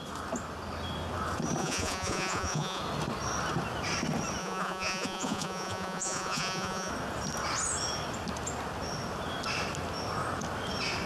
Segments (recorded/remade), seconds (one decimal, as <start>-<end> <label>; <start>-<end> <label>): 0.0-1.6 recorded; 1.6-2.8 remade; 2.8-4.4 recorded; 4.4-6.9 remade; 6.9-11.1 recorded